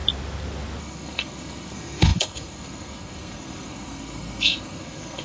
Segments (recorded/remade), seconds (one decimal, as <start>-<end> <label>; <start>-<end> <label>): 0.0-0.8 recorded; 0.8-5.2 remade